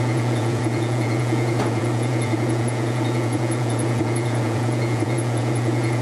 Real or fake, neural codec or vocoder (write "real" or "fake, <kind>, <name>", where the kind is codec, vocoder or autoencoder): fake, vocoder, Vocos